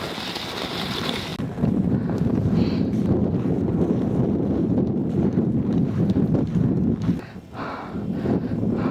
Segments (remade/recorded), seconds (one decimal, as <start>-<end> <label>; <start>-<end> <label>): 0.0-1.3 remade; 1.3-3.9 recorded; 3.9-5.0 remade; 5.0-7.8 recorded; 7.8-8.9 remade